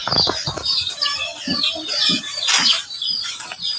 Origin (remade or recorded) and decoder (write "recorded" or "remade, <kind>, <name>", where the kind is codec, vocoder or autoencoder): recorded